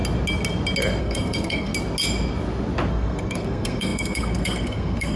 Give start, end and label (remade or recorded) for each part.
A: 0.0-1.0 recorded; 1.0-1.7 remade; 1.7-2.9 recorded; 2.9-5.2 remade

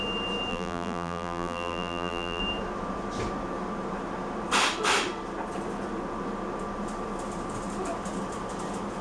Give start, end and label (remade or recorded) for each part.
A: 0.0-0.5 recorded; 0.5-2.4 remade; 2.4-9.0 recorded